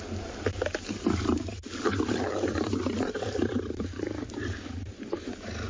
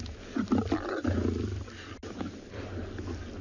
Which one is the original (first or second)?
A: second